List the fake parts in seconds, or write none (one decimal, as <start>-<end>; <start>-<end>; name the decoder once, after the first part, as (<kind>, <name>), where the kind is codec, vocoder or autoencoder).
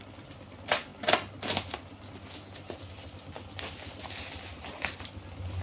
none